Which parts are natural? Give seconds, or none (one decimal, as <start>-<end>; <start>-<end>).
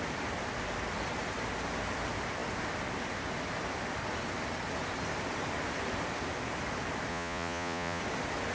0.0-7.1; 8.0-8.5